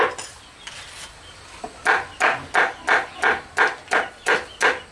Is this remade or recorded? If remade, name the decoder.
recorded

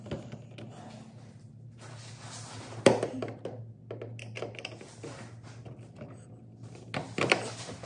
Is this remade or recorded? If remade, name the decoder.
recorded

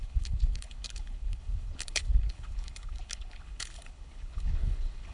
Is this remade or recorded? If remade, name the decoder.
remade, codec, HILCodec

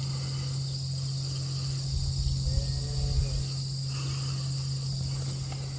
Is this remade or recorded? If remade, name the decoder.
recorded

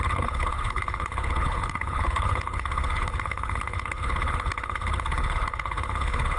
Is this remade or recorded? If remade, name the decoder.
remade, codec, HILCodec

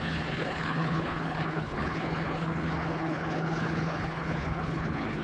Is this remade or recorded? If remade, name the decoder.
remade, codec, HILCodec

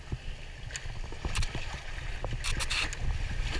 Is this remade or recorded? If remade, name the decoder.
recorded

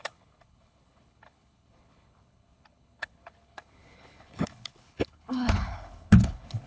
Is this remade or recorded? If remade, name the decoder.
remade, codec, HILCodec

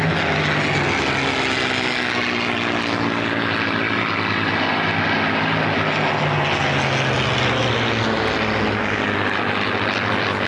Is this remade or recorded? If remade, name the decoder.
recorded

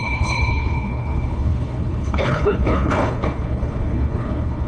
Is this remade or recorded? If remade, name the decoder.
remade, codec, HILCodec